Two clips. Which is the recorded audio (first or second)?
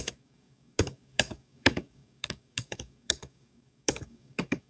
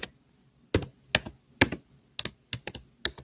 second